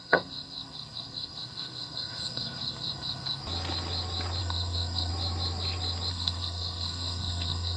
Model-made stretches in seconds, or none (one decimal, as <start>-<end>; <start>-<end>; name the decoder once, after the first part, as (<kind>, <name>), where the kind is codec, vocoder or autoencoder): 0.0-3.4 (codec, SNAC); 4.4-5.1; 6.1-7.8